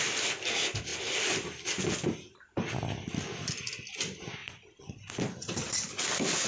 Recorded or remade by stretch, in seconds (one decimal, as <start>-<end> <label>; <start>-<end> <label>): 0.0-6.5 recorded